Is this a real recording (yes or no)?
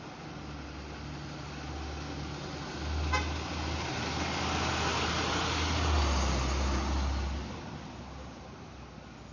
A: yes